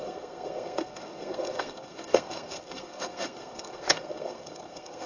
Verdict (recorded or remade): remade